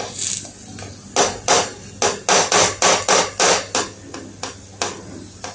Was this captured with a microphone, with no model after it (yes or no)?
yes